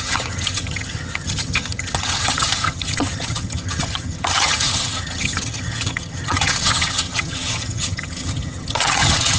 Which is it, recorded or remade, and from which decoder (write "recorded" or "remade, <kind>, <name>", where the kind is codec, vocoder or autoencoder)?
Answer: remade, vocoder, HiFi-GAN